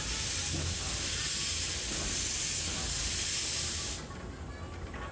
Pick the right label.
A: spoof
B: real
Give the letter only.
B